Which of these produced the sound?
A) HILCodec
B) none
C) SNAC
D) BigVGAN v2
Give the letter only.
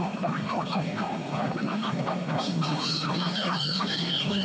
C